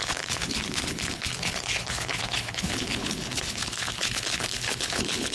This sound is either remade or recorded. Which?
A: remade